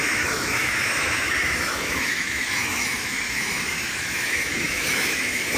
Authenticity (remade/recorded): remade